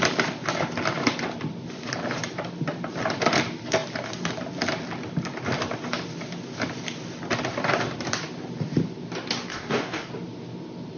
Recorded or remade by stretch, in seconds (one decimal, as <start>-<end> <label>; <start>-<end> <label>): 0.0-9.5 recorded; 9.5-10.1 remade; 10.1-11.0 recorded